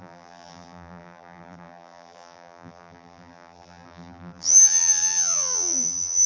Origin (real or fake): fake